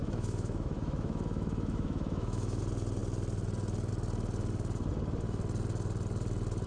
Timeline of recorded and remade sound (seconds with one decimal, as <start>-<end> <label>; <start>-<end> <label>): 0.0-2.6 remade; 2.6-6.7 recorded